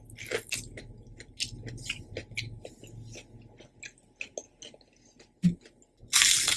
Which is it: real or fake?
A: real